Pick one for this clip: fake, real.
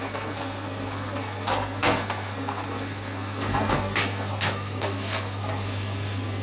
fake